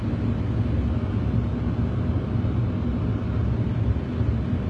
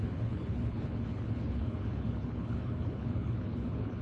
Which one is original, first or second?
first